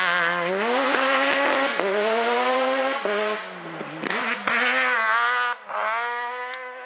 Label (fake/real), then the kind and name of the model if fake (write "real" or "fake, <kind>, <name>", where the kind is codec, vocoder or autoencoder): real